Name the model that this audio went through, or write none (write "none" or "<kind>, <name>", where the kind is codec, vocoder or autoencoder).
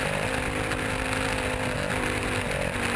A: none